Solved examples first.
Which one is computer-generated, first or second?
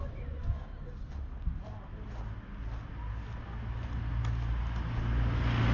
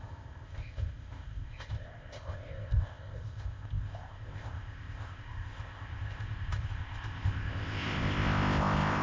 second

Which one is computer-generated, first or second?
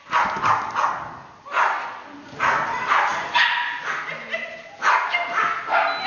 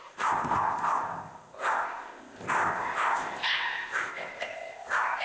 second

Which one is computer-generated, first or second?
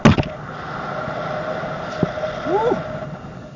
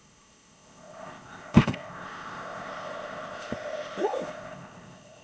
second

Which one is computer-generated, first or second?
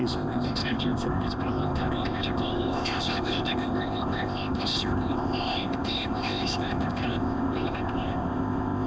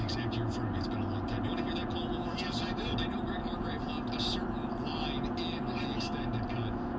first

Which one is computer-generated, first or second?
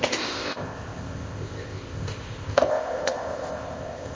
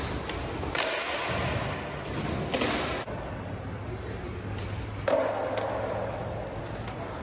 first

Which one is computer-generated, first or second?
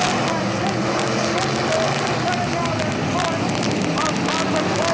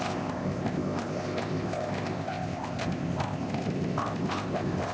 second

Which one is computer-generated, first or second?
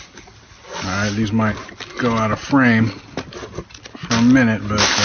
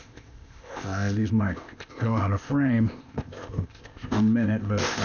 second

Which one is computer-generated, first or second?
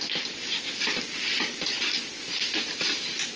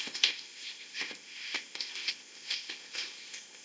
second